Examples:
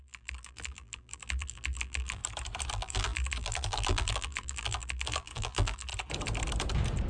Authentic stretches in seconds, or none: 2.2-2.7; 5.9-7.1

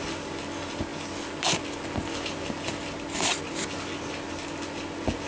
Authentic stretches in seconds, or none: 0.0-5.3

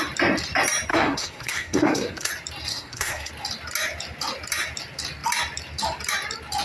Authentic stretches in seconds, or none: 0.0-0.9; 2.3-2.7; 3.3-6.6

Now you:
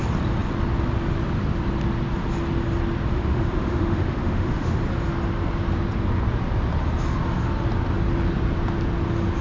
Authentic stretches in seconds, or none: 0.0-3.1; 4.8-9.4

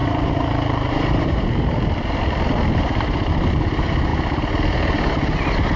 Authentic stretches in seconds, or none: 3.3-5.8

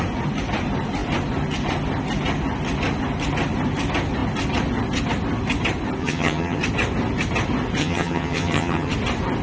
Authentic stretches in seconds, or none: 0.0-6.0; 6.6-7.8; 8.9-9.4

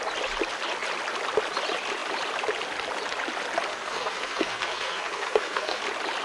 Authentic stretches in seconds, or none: 0.0-3.7; 5.8-6.2

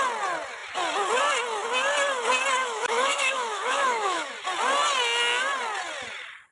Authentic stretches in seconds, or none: 0.0-2.6; 4.3-6.5